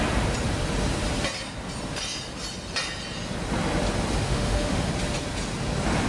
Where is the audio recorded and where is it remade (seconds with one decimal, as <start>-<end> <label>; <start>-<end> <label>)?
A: 0.0-4.2 recorded; 4.2-4.9 remade; 4.9-6.1 recorded